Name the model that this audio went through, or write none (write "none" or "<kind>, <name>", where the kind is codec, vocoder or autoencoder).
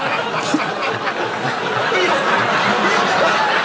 none